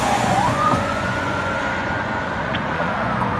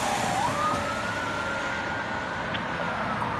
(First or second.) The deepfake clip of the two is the first